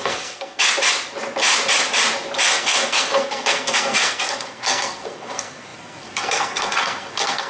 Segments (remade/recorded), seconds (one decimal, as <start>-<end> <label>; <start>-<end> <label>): 0.0-0.6 remade; 0.6-2.5 recorded; 2.5-7.5 remade